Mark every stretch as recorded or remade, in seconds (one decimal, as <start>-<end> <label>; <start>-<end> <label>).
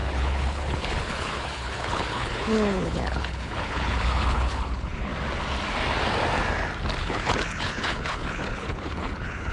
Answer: 0.0-5.1 remade; 5.1-7.0 recorded; 7.0-9.5 remade